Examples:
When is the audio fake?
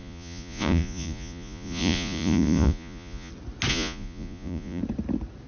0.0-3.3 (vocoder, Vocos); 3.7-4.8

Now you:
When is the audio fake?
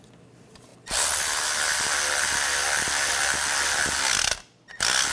none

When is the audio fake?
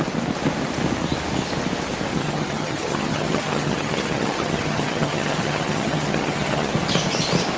2.1-6.7 (vocoder, HiFi-GAN)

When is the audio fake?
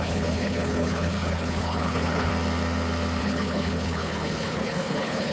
0.0-2.3 (codec, HILCodec); 3.2-5.3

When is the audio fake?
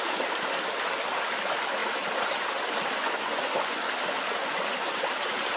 3.0-3.8 (vocoder, Vocos); 4.4-5.0